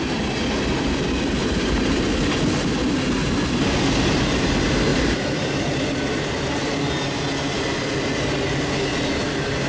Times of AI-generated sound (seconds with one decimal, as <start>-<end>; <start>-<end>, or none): 1.4-2.0; 4.9-5.9